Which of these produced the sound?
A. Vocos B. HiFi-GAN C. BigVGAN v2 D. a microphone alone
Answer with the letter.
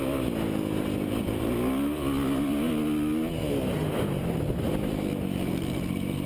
D